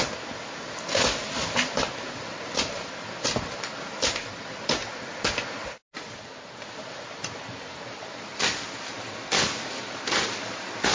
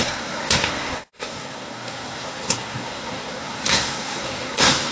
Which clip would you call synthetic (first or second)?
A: second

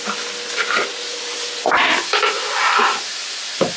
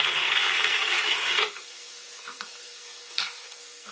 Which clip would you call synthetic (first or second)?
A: second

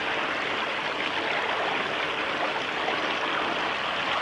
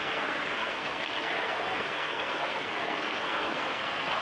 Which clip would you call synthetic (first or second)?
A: second